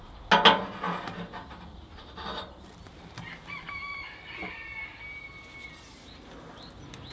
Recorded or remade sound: recorded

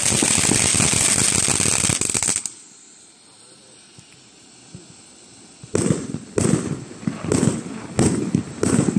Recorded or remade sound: recorded